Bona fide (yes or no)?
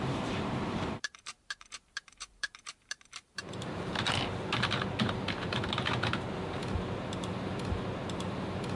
no